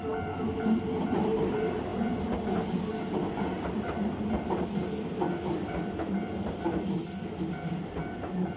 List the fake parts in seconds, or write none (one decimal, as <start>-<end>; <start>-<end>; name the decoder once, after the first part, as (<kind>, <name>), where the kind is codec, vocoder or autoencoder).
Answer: none